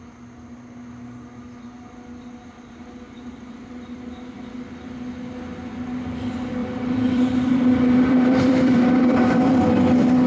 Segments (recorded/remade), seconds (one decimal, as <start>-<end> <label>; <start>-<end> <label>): 0.0-6.6 recorded; 6.6-9.7 remade; 9.7-10.3 recorded